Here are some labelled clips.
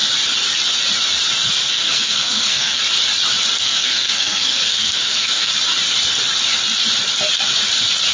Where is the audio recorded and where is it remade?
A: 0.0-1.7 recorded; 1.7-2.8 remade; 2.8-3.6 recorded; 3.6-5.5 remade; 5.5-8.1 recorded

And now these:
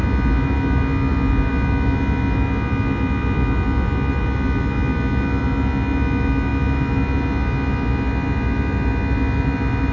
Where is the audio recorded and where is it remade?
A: 0.0-9.9 recorded

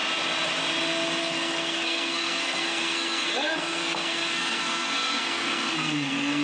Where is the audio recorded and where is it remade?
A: 0.0-1.2 recorded; 1.2-6.4 remade

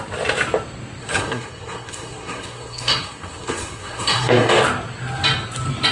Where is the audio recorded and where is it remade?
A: 0.0-1.0 recorded; 1.0-4.5 remade; 4.5-5.9 recorded

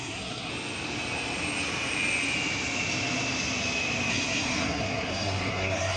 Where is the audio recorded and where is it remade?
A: 0.0-0.5 remade; 0.5-4.1 recorded; 4.1-6.0 remade

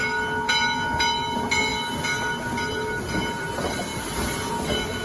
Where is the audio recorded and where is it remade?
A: 0.0-5.0 recorded